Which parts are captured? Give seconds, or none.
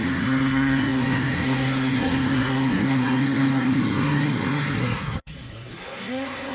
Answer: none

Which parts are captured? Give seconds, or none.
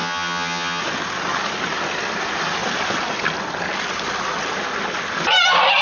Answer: 0.8-5.8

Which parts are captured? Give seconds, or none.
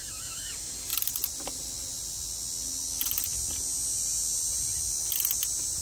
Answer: 0.0-5.8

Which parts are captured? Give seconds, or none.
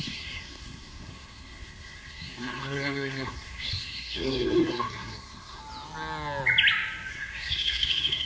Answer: 5.6-7.1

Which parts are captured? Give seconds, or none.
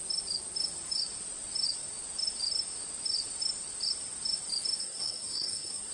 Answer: 0.0-4.8